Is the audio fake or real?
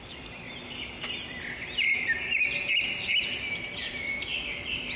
real